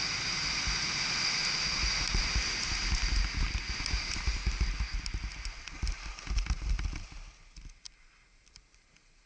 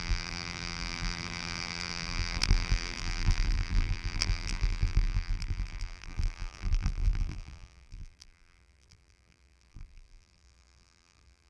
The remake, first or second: second